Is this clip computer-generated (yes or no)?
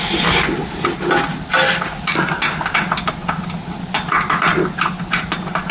no